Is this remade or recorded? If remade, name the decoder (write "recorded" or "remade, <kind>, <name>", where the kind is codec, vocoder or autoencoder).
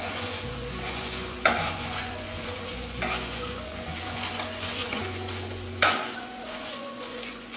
remade, vocoder, Vocos